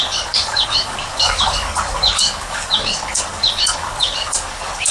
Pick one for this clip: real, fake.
fake